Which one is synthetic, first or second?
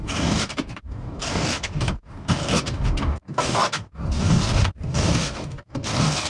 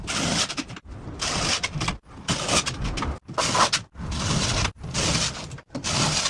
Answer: first